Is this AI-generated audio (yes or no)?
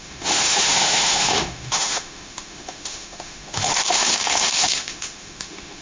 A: yes